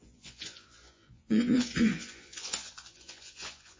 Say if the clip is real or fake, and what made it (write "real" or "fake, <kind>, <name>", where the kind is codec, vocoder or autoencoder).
fake, vocoder, Vocos